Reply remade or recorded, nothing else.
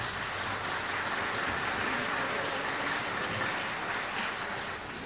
recorded